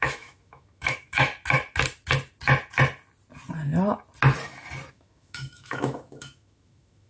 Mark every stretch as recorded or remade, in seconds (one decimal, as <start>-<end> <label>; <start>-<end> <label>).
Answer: 0.0-1.3 remade; 1.3-4.9 recorded; 4.9-7.1 remade

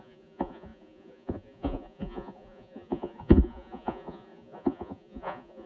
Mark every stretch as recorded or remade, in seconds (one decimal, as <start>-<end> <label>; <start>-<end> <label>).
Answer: 0.0-5.7 remade

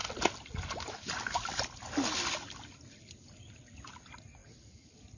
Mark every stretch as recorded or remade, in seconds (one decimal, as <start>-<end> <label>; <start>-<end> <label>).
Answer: 0.0-5.2 recorded

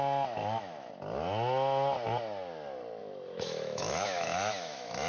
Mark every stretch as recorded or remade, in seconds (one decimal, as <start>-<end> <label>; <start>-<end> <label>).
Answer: 0.0-0.4 recorded; 0.4-0.9 remade; 0.9-3.0 recorded; 3.0-5.1 remade

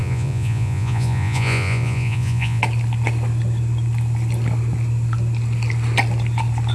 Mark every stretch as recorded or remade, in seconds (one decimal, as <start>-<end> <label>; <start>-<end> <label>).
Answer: 0.0-2.6 remade; 2.6-6.7 recorded